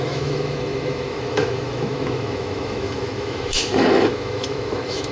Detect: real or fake fake